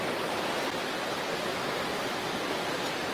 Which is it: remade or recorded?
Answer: recorded